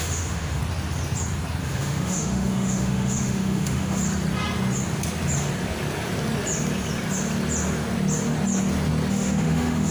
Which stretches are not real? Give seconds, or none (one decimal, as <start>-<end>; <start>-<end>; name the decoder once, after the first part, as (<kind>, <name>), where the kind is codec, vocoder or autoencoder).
0.0-0.6 (autoencoder, DAC-VAE); 1.6-4.0; 9.1-9.9